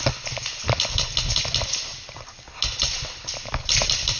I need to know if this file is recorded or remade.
recorded